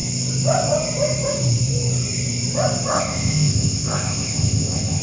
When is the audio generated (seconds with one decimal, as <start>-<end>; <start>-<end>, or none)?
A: 2.9-5.0